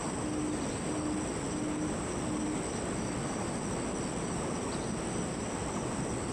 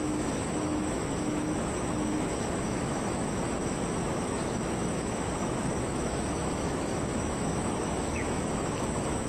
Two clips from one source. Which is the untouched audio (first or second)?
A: first